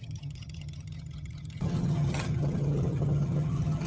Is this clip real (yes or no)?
no